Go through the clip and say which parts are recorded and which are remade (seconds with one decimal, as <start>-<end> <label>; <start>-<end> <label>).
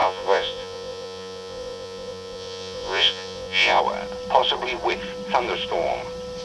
0.0-3.8 remade; 3.8-6.4 recorded